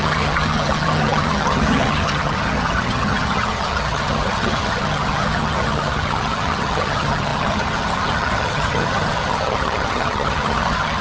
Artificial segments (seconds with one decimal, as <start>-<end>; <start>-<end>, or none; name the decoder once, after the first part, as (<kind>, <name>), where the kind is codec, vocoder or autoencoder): 0.0-11.0 (vocoder, HiFi-GAN)